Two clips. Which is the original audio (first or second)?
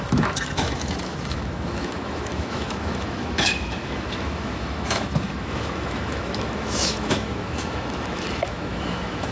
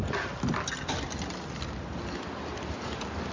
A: second